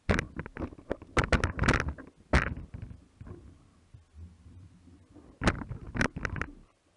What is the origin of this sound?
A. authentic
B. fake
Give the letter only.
A